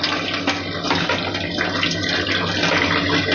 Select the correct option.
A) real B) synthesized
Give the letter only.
A